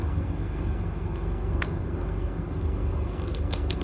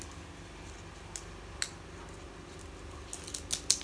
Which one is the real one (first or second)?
second